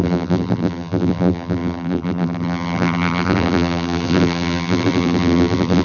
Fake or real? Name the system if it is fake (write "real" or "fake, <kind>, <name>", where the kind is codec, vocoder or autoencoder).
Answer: fake, vocoder, BigVGAN v2